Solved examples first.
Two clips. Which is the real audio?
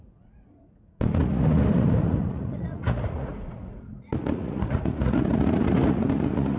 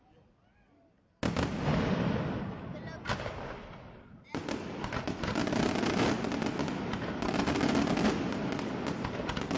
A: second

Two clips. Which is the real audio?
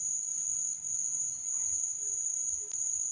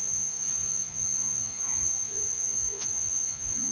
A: first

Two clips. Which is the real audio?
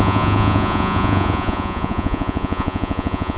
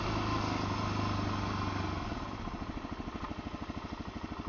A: second